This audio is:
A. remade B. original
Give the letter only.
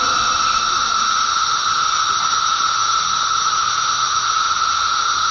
B